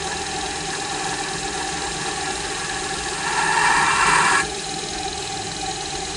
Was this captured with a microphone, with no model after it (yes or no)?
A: yes